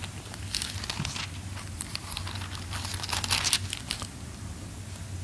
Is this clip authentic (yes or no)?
yes